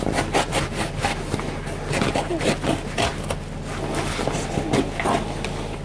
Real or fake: real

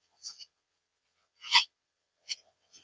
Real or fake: fake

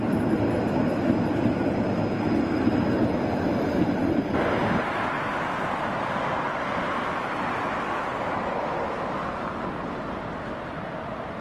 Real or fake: real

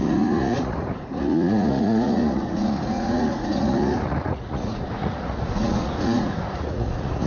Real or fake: fake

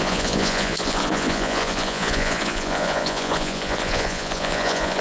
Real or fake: fake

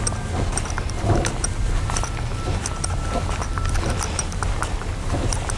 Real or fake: real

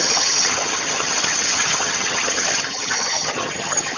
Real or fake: fake